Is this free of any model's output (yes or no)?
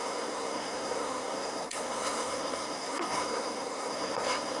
no